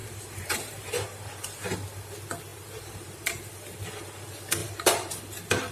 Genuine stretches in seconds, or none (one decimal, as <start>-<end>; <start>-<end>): 1.6-2.5; 3.4-4.6; 5.2-5.7